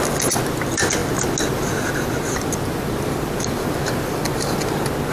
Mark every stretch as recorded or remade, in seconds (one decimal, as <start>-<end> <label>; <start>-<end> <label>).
0.0-5.1 recorded